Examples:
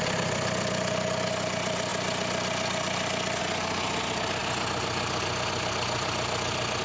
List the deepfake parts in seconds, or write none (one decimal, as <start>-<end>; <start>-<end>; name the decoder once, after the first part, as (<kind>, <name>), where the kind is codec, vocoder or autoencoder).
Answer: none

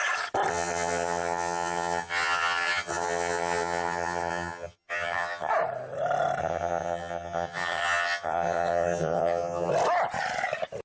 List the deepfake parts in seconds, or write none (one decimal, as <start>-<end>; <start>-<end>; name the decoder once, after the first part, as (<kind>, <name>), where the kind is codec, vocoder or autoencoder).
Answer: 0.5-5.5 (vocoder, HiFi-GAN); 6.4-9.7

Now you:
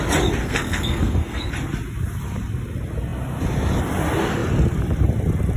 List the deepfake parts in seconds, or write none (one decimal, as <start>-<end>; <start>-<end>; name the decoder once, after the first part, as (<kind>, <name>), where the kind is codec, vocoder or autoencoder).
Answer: 0.4-1.5 (codec, SNAC)

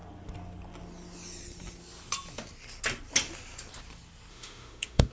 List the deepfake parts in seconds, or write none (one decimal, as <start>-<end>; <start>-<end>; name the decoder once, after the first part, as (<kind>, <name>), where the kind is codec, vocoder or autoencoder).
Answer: 4.3-5.1 (autoencoder, DAC-VAE)

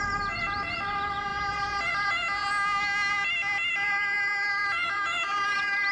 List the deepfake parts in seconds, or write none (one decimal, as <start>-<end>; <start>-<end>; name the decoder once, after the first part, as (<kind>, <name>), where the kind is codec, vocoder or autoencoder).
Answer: none

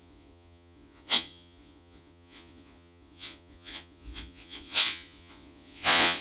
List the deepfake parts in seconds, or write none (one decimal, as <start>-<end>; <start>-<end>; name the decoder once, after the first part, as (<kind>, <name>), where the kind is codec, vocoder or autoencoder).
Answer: 0.0-6.2 (vocoder, Vocos)